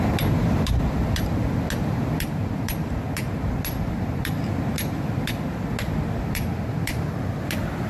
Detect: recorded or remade recorded